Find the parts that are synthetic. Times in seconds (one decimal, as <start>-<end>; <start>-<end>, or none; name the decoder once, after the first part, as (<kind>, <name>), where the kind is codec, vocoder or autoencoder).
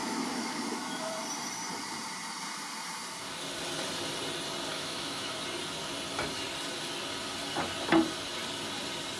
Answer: 0.0-1.1 (autoencoder, DAC-VAE); 4.7-5.3